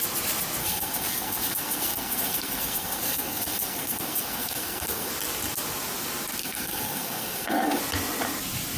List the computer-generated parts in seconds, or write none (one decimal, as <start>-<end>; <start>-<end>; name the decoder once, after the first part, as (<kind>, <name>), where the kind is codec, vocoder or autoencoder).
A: 0.6-5.1 (codec, SNAC); 6.4-7.8